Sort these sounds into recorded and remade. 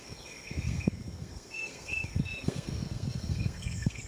remade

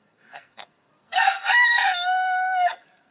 remade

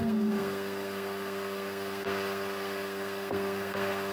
remade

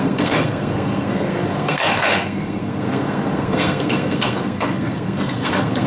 remade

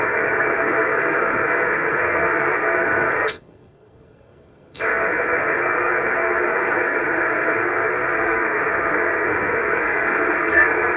remade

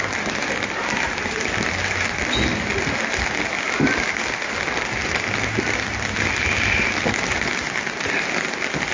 recorded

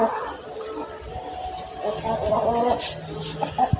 recorded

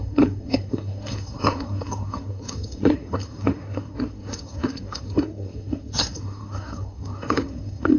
remade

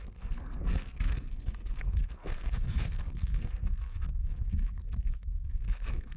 remade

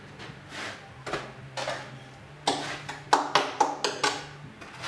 recorded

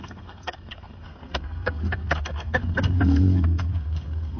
remade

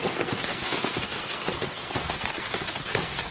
remade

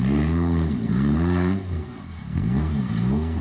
remade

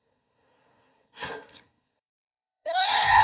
remade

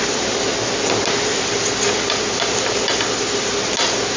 recorded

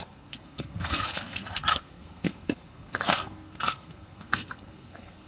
remade